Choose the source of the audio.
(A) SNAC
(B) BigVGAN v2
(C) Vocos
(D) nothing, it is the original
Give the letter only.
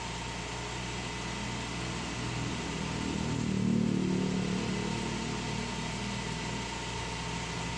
D